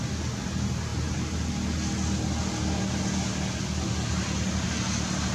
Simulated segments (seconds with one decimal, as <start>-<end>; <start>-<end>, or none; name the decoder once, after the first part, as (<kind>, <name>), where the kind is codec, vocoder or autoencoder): none